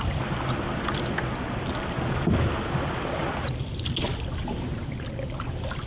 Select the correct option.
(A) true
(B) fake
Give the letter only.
A